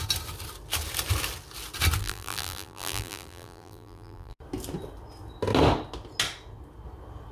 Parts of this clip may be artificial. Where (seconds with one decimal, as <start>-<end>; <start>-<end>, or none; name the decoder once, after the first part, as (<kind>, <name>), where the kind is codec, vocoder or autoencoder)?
2.0-4.4 (vocoder, BigVGAN v2)